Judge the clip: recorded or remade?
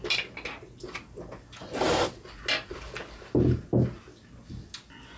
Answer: recorded